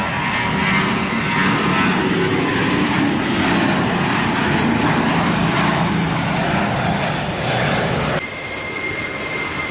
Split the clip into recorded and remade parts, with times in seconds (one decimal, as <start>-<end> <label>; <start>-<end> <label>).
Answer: 0.0-2.6 recorded; 2.6-3.4 remade; 3.4-9.7 recorded